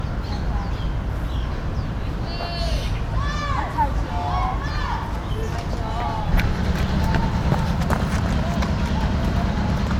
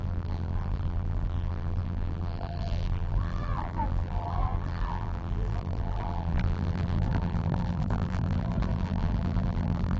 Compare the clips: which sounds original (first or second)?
first